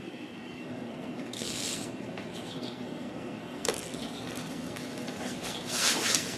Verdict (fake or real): fake